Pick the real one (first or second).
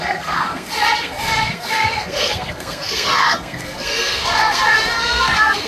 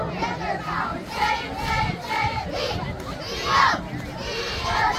second